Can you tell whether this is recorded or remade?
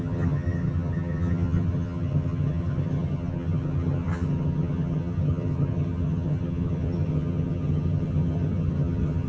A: remade